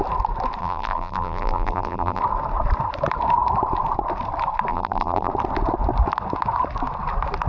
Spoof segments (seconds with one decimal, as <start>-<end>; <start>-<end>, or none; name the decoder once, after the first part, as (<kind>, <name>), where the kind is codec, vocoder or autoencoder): 0.6-2.2 (vocoder, BigVGAN v2); 4.7-5.3